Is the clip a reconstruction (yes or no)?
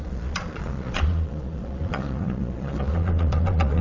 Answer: yes